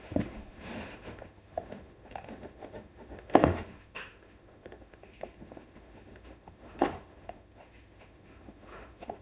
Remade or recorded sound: remade